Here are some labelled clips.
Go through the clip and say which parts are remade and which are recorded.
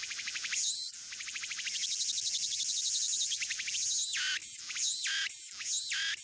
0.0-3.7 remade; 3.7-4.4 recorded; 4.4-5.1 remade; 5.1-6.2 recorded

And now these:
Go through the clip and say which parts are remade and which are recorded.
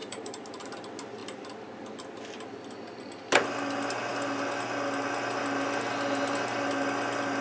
0.0-0.7 remade; 0.7-7.4 recorded